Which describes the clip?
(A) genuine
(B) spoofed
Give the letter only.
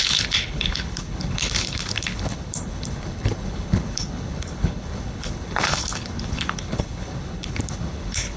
B